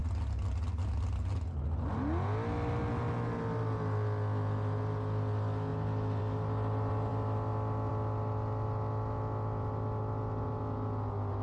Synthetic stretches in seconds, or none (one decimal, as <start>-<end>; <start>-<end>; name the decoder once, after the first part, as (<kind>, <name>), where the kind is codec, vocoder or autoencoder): none